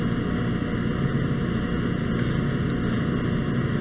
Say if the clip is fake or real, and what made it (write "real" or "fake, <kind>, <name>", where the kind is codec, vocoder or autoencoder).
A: real